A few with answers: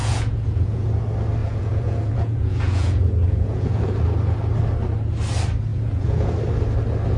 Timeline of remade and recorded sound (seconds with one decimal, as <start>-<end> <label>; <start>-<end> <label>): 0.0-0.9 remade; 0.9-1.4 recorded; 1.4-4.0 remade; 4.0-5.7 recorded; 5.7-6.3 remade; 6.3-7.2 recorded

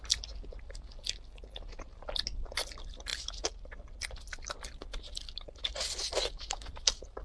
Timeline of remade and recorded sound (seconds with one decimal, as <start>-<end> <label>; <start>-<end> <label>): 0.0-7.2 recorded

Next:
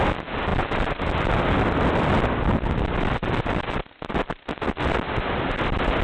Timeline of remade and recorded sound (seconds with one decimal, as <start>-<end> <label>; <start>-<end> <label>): 0.0-6.0 recorded